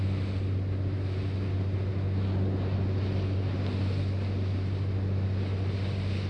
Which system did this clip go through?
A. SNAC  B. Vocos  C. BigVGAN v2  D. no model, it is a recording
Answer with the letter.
D